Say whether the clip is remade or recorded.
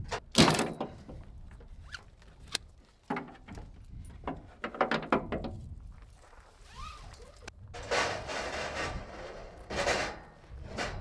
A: recorded